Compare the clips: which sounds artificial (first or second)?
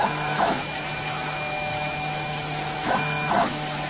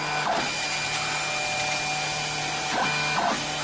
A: first